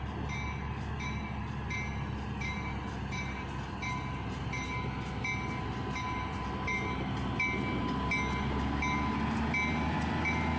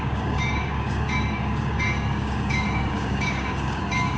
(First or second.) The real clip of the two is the first